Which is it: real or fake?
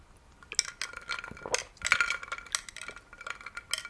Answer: real